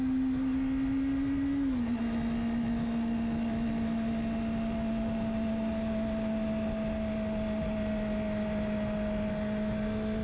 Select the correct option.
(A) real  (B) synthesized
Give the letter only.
A